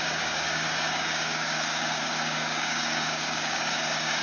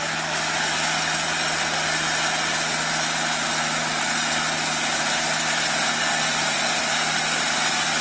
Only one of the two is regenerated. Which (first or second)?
first